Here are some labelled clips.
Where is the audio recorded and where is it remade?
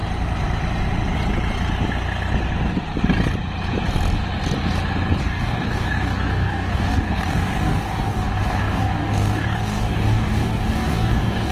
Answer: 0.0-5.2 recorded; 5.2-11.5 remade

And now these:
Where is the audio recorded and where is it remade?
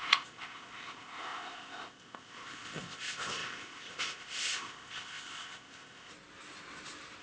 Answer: 0.0-6.1 remade; 6.1-7.2 recorded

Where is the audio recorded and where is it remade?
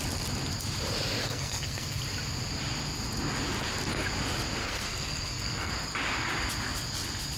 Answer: 0.0-1.2 recorded; 1.2-2.0 remade; 2.0-4.6 recorded; 4.6-5.7 remade; 5.7-7.4 recorded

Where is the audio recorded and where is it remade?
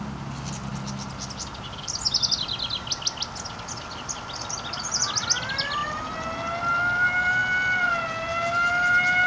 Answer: 0.0-9.3 recorded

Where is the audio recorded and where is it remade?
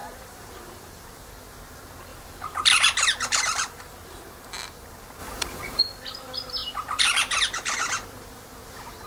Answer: 0.0-1.3 remade; 1.3-2.1 recorded; 2.1-3.8 remade; 3.8-5.2 recorded; 5.2-5.8 remade; 5.8-6.6 recorded; 6.6-8.4 remade; 8.4-9.1 recorded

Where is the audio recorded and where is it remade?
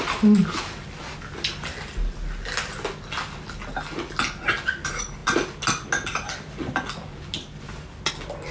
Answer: 0.0-8.5 recorded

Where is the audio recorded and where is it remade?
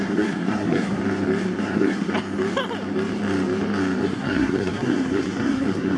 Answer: 0.0-1.0 remade; 1.0-1.6 recorded; 1.6-2.1 remade; 2.1-4.0 recorded; 4.0-6.0 remade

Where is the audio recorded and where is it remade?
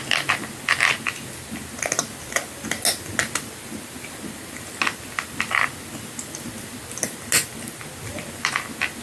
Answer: 0.0-9.0 recorded